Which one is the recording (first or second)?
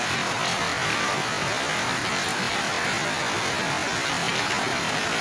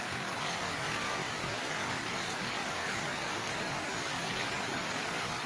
first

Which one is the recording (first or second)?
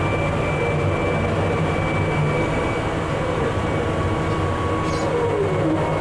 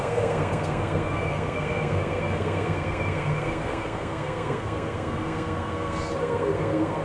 first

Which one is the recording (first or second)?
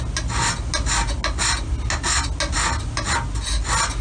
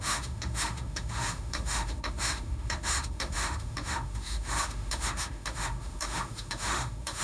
first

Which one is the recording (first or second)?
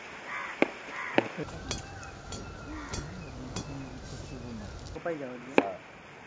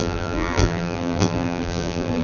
first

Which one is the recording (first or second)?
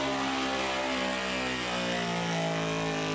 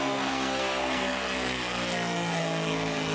first